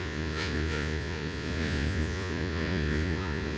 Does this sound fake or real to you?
fake